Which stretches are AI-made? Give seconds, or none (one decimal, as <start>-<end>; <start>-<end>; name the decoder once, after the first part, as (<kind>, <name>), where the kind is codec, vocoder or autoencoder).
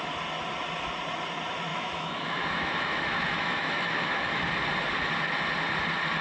1.7-4.5 (autoencoder, DAC-VAE)